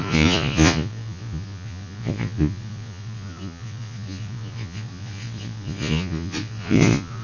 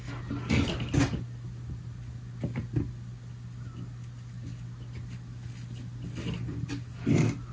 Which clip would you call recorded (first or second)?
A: second